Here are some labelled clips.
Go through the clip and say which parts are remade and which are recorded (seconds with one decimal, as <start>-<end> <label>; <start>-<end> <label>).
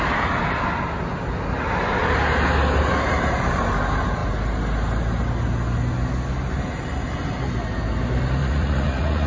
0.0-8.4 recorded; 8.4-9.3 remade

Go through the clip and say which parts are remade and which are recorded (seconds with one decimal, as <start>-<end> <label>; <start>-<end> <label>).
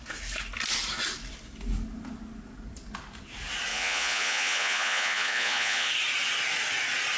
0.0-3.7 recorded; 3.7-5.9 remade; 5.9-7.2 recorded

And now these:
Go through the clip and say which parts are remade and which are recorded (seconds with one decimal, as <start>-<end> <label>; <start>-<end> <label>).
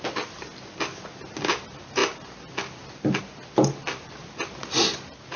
0.0-5.4 recorded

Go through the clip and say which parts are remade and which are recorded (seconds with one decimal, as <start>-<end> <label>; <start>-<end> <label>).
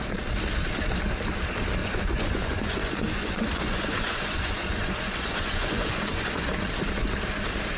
0.0-1.8 recorded; 1.8-6.5 remade; 6.5-7.8 recorded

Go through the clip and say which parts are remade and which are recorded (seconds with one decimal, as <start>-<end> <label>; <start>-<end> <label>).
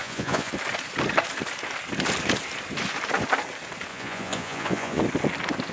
0.0-0.5 remade; 0.5-3.9 recorded; 3.9-5.0 remade; 5.0-5.7 recorded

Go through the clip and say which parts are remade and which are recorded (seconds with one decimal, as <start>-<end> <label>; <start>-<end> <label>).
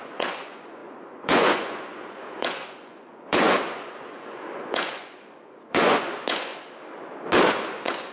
0.0-6.5 remade; 6.5-7.5 recorded; 7.5-8.1 remade